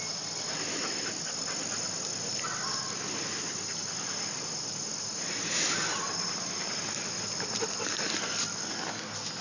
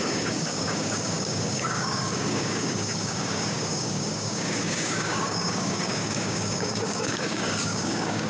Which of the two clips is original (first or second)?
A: first